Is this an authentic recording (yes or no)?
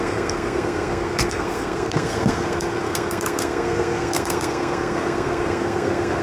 no